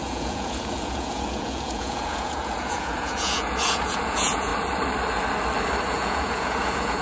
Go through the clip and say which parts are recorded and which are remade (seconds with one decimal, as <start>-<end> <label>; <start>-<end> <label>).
0.0-4.5 remade; 4.5-5.9 recorded; 5.9-7.0 remade